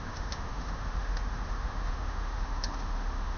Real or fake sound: fake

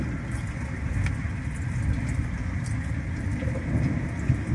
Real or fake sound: real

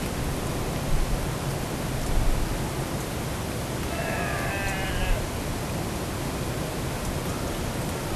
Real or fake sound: real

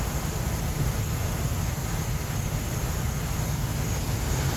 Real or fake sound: real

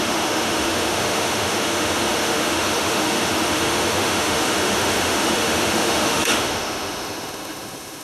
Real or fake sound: fake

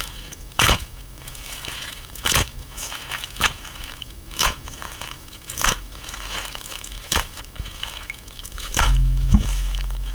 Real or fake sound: fake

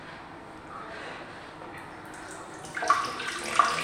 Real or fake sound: real